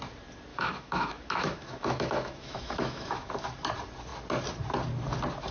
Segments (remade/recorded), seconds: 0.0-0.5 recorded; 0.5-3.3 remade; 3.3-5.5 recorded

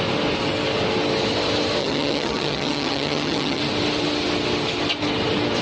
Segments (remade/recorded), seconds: 0.0-1.8 recorded; 1.8-3.6 remade; 3.6-5.6 recorded

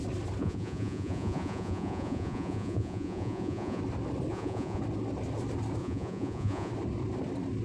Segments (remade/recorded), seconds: 0.0-0.4 recorded; 0.4-3.8 remade; 3.8-4.3 recorded; 4.3-4.8 remade; 4.8-5.8 recorded; 5.8-6.7 remade; 6.7-7.6 recorded